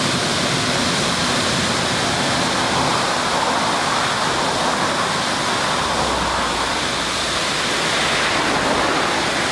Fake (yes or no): no